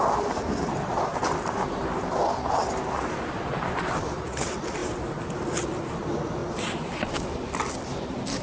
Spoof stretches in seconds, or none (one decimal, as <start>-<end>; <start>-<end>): 0.0-1.1; 3.1-4.8; 5.9-8.4